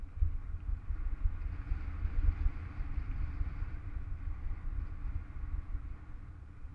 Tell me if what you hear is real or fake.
real